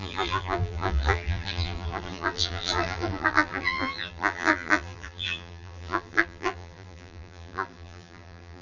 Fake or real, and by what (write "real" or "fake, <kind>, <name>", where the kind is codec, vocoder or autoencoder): fake, vocoder, BigVGAN v2